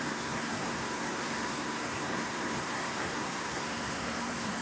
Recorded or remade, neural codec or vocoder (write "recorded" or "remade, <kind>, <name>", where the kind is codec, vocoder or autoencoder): remade, codec, SNAC